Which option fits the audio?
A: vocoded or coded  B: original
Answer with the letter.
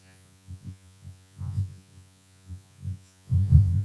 A